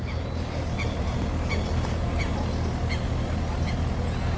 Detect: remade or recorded recorded